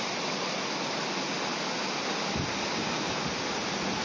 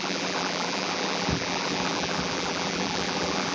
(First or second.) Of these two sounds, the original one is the first